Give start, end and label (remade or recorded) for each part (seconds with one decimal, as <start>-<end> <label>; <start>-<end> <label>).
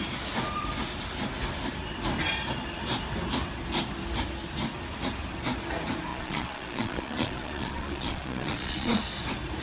0.0-6.1 recorded; 6.1-9.0 remade; 9.0-9.6 recorded